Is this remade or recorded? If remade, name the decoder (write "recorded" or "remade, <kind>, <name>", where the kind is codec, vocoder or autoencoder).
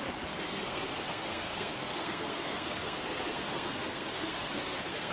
remade, codec, SNAC